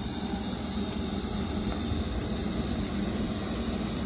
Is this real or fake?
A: real